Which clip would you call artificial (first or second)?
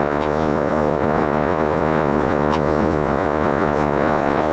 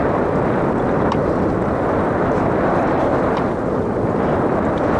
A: first